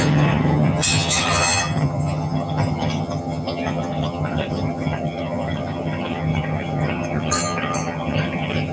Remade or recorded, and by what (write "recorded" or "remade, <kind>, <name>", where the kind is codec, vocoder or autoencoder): remade, vocoder, HiFi-GAN